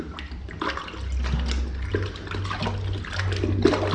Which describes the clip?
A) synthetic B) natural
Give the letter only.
B